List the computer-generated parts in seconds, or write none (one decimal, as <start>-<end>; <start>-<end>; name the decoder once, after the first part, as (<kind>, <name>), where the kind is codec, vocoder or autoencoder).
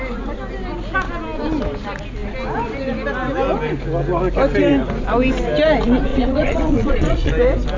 6.1-7.3 (vocoder, Vocos)